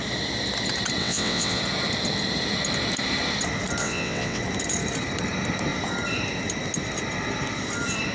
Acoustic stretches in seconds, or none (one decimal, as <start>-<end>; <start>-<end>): 0.0-1.0; 1.6-3.8; 4.4-8.1